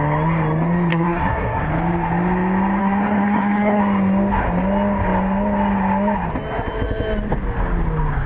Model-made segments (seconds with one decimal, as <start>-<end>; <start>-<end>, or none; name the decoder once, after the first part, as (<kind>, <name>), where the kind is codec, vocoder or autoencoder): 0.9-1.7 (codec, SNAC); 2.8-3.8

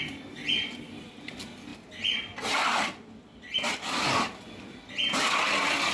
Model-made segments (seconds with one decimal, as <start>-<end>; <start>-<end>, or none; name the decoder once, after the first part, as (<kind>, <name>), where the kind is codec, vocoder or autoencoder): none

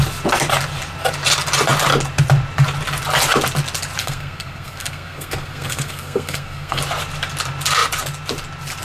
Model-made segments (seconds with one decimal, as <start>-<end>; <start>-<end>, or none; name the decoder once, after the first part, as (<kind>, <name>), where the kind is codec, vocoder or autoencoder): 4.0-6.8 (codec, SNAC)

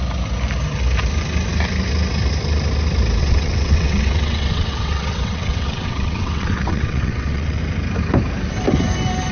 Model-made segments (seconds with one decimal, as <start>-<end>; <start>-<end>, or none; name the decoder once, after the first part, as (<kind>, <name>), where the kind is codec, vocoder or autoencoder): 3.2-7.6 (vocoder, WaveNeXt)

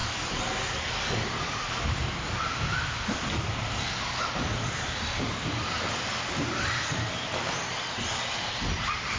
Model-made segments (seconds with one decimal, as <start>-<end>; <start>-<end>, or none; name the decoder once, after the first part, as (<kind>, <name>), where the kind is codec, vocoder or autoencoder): none

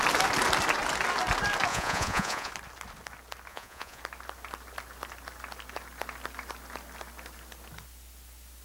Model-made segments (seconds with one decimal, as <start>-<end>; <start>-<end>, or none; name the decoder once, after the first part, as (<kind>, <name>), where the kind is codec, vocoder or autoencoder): 1.7-2.5 (vocoder, Vocos); 3.5-4.0

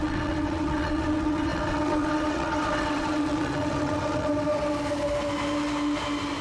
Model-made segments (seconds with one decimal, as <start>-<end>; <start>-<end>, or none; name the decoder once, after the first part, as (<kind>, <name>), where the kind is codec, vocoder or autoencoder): 0.0-4.3 (vocoder, WaveNeXt)

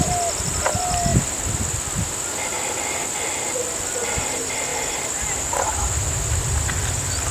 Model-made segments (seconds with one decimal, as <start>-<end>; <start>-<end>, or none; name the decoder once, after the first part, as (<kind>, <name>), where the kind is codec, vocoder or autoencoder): none